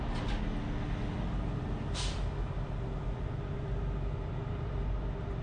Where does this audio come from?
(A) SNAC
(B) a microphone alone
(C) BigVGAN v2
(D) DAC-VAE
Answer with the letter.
B